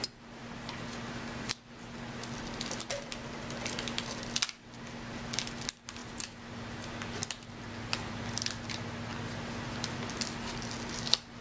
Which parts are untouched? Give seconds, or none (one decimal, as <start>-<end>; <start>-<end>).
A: 0.0-11.4